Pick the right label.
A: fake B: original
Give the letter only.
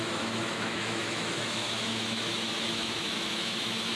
A